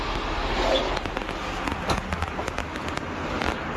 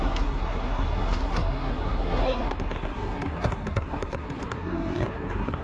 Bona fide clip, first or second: first